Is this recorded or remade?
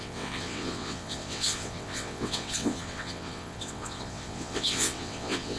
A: remade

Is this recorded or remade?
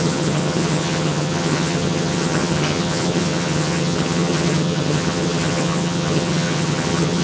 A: remade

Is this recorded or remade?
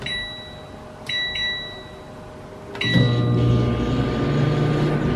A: recorded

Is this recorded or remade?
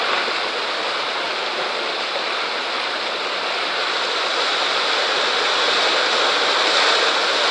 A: recorded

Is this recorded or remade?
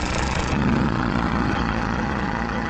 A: remade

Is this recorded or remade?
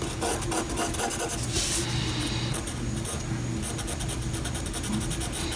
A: recorded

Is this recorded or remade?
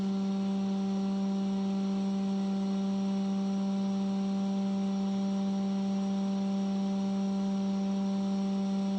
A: recorded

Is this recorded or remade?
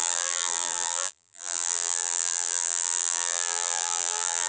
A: remade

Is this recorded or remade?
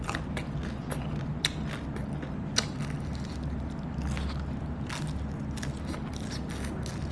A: recorded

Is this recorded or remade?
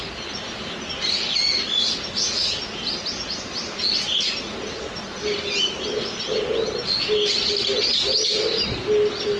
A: recorded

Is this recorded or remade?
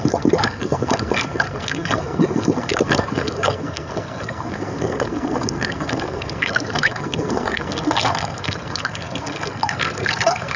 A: remade